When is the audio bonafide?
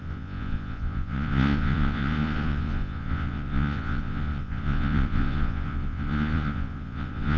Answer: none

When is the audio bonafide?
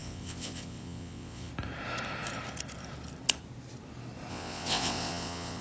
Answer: 1.5-4.3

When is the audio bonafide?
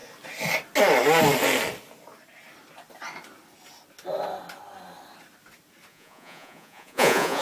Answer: 0.0-5.9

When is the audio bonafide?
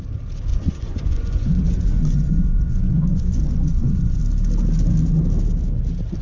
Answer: 0.0-0.5; 4.2-6.2